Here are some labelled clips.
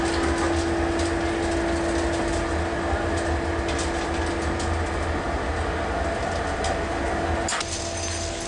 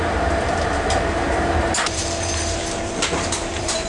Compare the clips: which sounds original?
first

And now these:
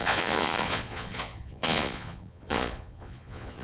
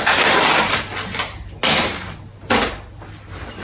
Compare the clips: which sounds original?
second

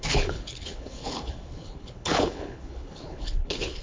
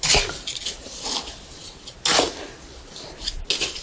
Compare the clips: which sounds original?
second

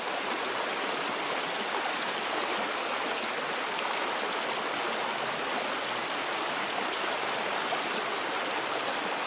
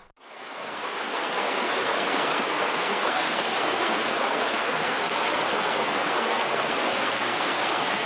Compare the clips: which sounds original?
first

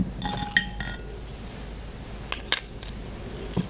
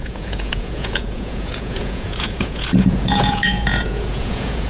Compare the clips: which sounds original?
first